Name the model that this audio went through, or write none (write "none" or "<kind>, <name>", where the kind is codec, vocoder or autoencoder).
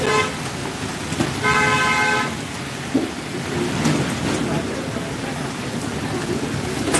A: none